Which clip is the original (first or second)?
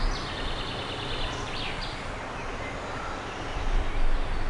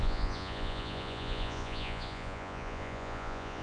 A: first